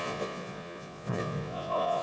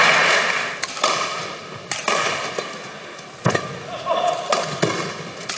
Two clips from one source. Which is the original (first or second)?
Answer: second